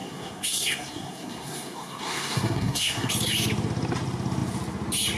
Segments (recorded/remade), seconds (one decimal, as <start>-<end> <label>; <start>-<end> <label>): 0.0-3.1 remade; 3.1-5.2 recorded